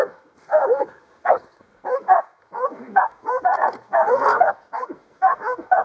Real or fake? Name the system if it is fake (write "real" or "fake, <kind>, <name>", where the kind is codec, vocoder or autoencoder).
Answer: fake, codec, SNAC